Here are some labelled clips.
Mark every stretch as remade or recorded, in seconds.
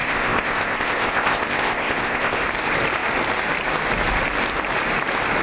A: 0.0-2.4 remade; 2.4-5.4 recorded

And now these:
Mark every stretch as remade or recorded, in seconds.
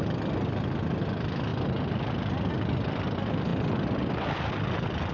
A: 0.0-5.1 recorded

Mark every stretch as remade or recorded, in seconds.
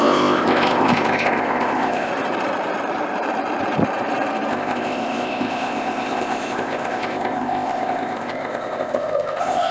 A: 0.0-2.1 remade; 2.1-4.5 recorded; 4.5-9.7 remade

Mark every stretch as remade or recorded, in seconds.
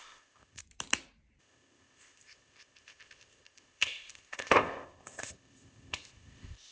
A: 0.0-0.6 remade; 0.6-1.4 recorded; 1.4-6.7 remade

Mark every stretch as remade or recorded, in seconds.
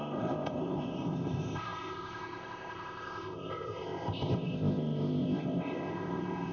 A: 0.0-6.5 remade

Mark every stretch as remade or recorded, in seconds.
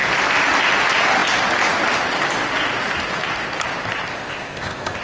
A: 0.0-4.1 recorded; 4.1-5.0 remade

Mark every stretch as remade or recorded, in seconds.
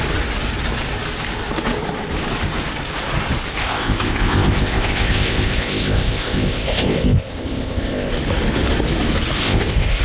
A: 0.0-3.6 recorded; 3.6-8.1 remade; 8.1-9.4 recorded; 9.4-10.0 remade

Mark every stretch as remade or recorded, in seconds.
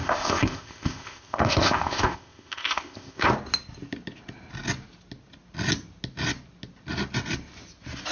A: 0.0-3.3 remade; 3.3-8.1 recorded